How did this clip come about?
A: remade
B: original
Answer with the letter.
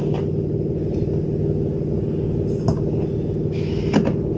B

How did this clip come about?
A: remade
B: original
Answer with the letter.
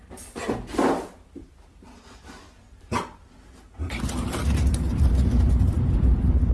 A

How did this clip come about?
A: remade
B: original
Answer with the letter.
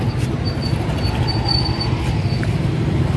B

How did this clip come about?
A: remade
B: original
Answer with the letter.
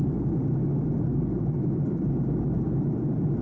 B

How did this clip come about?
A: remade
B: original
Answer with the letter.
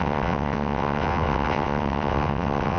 A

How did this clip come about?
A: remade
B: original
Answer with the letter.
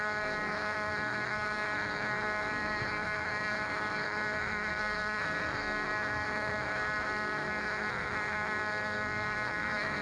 A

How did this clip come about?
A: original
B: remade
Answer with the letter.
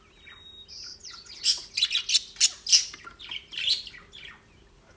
A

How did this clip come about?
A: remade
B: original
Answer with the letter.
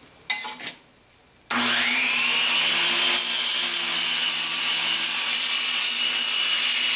B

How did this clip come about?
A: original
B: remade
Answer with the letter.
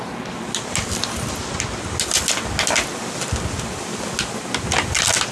A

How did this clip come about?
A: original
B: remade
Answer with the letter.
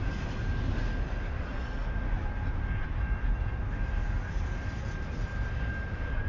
A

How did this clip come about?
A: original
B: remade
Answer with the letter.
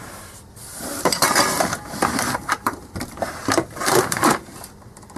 B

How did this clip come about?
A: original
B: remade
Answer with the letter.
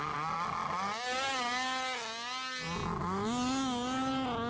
A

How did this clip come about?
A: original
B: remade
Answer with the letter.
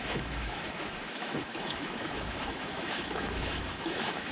B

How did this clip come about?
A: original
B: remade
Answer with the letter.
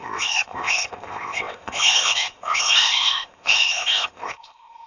B